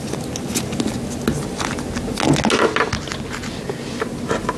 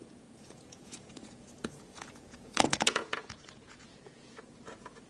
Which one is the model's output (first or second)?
second